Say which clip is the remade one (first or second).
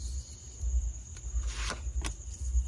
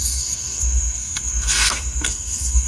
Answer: second